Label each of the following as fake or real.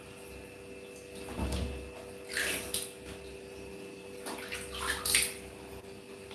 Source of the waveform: real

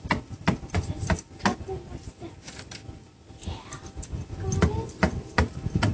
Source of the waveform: real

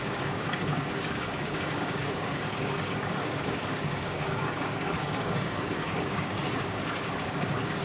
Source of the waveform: fake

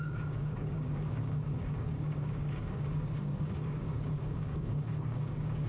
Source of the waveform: fake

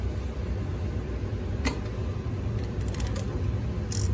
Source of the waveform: real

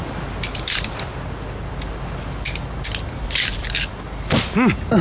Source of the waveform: real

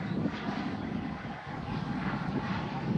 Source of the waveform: fake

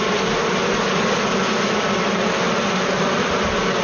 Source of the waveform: real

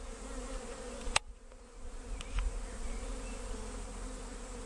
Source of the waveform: real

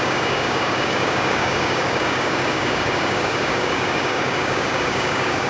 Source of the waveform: fake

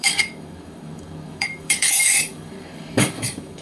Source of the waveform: fake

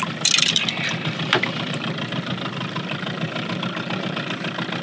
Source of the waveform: real